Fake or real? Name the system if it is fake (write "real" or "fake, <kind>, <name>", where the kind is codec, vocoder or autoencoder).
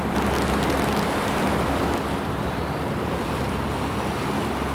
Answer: fake, vocoder, BigVGAN v2